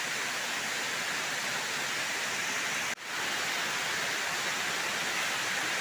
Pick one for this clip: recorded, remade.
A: recorded